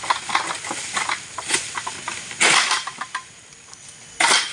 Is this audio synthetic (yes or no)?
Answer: no